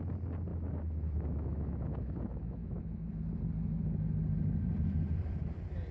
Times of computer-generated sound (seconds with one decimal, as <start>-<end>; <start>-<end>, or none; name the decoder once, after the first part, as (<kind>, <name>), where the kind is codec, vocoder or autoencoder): 0.5-3.2 (autoencoder, DAC-VAE)